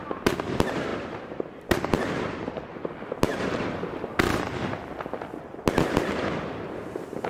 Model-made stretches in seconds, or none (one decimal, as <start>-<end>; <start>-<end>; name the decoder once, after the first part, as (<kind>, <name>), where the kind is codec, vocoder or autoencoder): 3.3-4.7 (vocoder, BigVGAN v2)